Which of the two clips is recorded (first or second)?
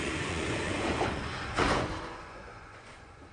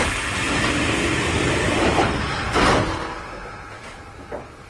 second